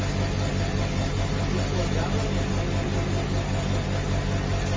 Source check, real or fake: real